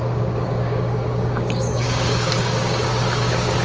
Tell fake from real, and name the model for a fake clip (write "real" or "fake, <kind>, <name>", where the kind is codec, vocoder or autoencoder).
fake, codec, DAC